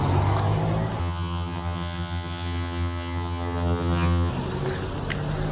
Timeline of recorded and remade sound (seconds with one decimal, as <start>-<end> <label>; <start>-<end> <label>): 0.0-1.0 recorded; 1.0-4.3 remade; 4.3-5.5 recorded